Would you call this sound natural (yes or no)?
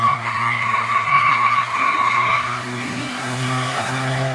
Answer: no